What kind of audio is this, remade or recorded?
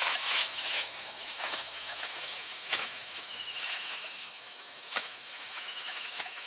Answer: remade